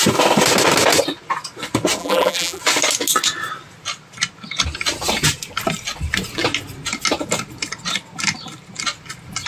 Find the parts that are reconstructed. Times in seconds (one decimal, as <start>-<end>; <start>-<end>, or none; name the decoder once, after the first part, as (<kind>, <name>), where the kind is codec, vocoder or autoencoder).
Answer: 2.0-2.6 (vocoder, BigVGAN v2)